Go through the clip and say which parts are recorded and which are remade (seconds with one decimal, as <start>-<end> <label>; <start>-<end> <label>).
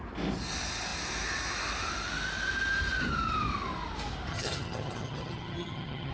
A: 0.0-4.3 recorded; 4.3-6.1 remade